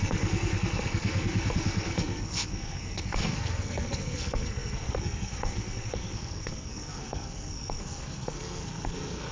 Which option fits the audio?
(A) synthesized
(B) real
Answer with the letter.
A